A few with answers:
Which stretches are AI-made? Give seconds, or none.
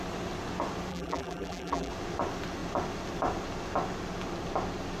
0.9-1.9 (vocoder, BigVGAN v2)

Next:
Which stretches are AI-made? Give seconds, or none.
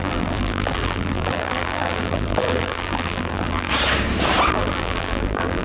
0.0-3.7 (vocoder, BigVGAN v2); 4.5-5.6